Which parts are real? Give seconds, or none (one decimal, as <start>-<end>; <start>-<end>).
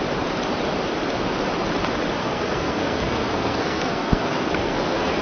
0.0-2.2